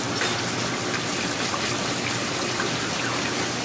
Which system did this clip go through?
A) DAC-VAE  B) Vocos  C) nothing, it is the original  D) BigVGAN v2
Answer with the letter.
C